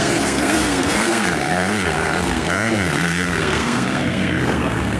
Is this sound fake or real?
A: fake